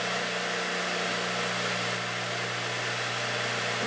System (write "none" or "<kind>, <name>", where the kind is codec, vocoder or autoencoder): none